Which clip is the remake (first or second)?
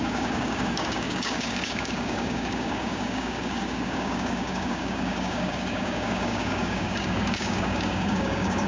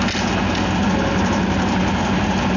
first